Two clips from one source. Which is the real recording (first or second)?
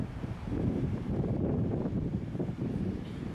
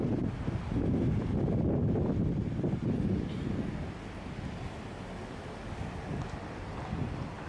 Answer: second